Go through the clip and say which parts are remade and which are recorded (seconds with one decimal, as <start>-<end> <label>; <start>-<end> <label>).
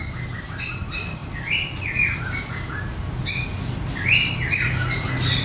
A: 0.0-1.2 recorded; 1.2-2.2 remade; 2.2-5.4 recorded